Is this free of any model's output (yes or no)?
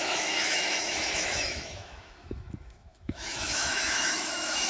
no